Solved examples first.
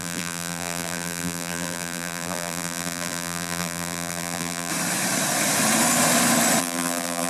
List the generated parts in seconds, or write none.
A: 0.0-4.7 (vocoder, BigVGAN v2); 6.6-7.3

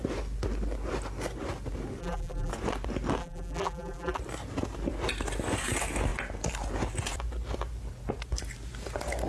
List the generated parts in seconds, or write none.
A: 2.0-2.5 (vocoder, BigVGAN v2); 3.2-4.2